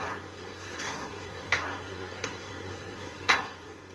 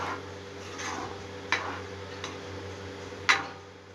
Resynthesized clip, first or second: first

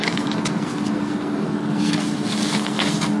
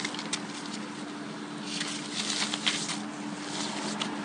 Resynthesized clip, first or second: first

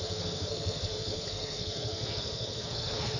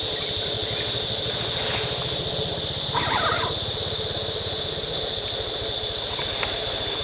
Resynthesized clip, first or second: first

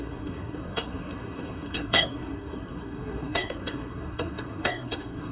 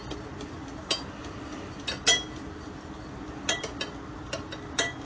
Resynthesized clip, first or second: first